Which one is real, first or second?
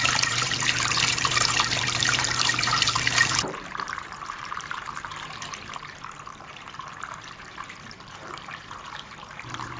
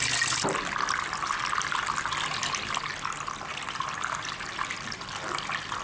second